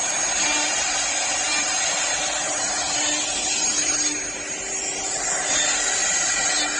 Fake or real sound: real